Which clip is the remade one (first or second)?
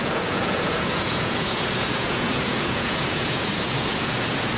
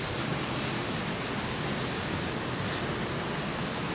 first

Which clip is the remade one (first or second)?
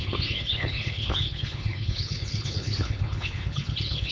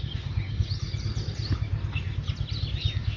first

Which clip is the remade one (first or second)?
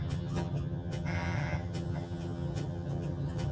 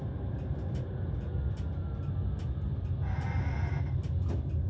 first